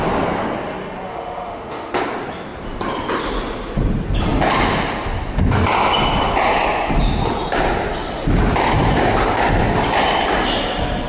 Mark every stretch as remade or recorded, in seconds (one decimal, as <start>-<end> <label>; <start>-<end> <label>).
0.0-1.1 recorded; 1.1-2.0 remade; 2.0-11.1 recorded